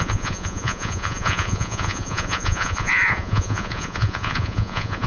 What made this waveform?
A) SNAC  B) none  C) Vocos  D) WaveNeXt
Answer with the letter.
C